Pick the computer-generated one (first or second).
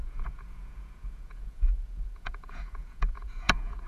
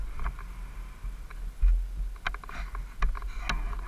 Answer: first